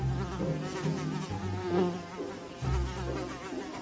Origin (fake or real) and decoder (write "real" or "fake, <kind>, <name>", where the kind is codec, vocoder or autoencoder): real